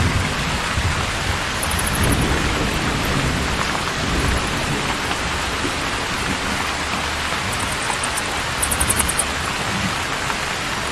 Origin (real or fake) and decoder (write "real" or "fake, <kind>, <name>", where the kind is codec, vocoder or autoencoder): real